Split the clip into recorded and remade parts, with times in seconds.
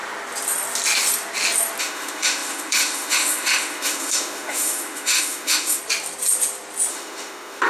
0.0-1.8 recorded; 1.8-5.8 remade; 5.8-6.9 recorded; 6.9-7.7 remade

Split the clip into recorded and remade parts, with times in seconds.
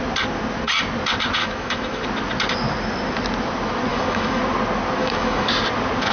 0.0-1.4 recorded; 1.4-2.0 remade; 2.0-3.9 recorded; 3.9-4.4 remade; 4.4-5.0 recorded; 5.0-5.5 remade; 5.5-6.1 recorded